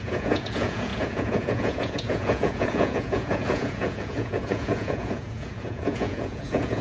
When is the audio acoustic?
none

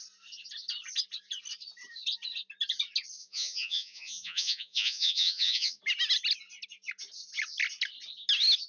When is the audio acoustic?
0.0-3.2; 5.8-8.7